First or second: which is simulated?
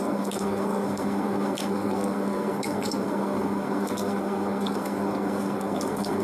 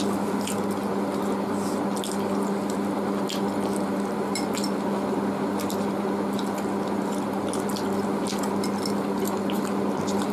first